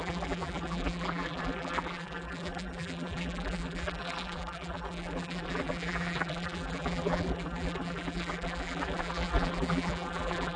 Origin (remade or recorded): remade